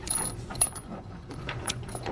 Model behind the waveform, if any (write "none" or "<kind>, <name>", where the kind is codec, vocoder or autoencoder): vocoder, Vocos